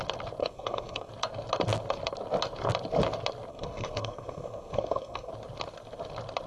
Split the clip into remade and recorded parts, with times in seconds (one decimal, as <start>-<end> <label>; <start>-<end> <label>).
0.0-0.4 recorded; 0.4-1.1 remade; 1.1-3.5 recorded; 3.5-5.3 remade; 5.3-6.5 recorded